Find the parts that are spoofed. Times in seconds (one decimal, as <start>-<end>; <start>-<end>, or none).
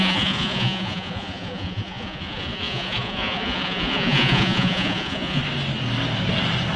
0.0-5.4